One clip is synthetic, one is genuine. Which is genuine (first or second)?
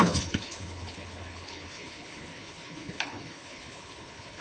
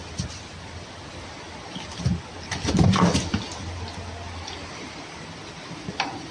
second